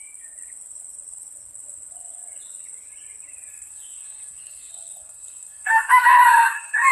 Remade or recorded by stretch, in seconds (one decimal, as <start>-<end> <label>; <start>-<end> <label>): 0.0-3.5 recorded; 3.5-6.9 remade